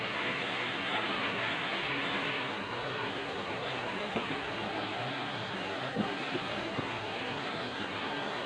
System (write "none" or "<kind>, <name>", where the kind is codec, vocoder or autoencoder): codec, SNAC